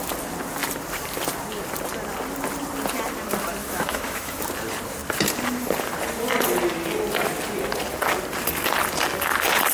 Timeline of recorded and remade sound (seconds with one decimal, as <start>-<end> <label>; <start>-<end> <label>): 0.0-3.6 recorded; 3.6-4.4 remade; 4.4-9.7 recorded